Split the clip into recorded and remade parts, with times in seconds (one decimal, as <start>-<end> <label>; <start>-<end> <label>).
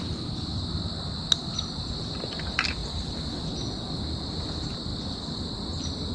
0.0-2.8 recorded; 2.8-3.5 remade; 3.5-6.1 recorded